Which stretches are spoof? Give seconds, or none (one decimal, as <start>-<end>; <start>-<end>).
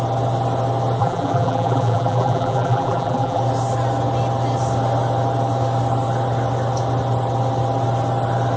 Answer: 1.0-3.4